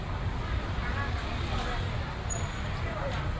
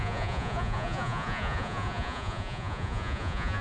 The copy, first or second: second